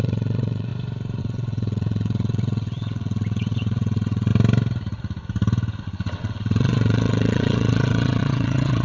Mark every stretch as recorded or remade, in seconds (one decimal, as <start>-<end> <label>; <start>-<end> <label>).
0.0-0.7 remade; 0.7-1.2 recorded; 1.2-4.3 remade; 4.3-5.8 recorded; 5.8-8.8 remade